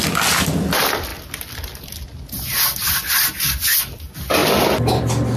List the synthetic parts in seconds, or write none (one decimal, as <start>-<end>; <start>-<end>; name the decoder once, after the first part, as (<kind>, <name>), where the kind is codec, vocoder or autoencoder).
none